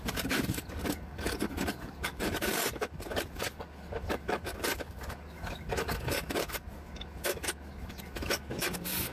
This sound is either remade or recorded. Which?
remade